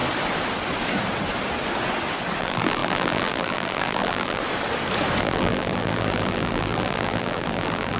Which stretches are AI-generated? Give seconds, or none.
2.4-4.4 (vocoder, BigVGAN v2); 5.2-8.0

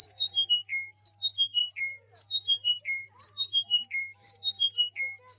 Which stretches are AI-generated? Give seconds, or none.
0.0-0.5 (vocoder, BigVGAN v2); 1.6-4.8

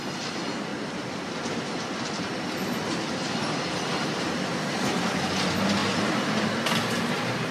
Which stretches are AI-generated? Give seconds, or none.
0.7-5.2 (vocoder, BigVGAN v2)

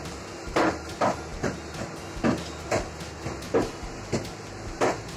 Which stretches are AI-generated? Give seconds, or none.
none

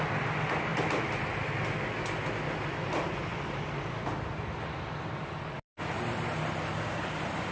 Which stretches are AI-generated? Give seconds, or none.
3.3-7.1 (vocoder, BigVGAN v2)

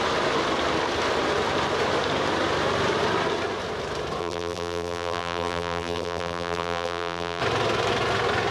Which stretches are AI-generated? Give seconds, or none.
4.2-7.4 (vocoder, BigVGAN v2)

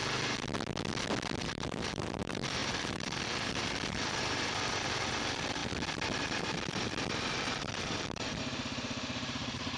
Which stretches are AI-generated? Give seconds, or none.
1.4-9.8 (vocoder, BigVGAN v2)